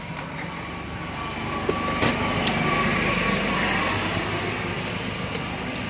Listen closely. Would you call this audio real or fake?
real